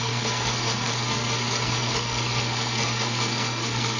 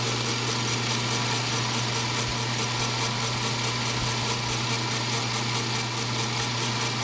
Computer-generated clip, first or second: first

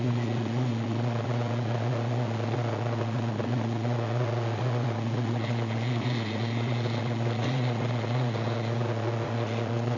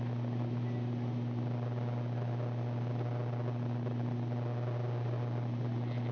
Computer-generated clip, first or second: first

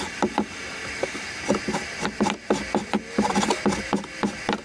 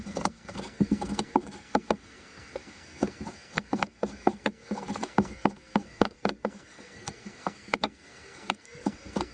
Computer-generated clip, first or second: second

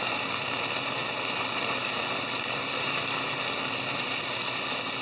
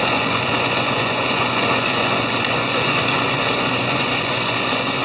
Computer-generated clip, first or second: second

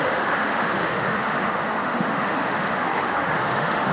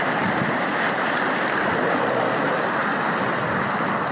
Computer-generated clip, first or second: first